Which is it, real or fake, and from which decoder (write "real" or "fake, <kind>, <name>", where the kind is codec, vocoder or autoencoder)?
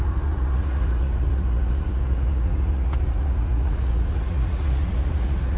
fake, vocoder, Vocos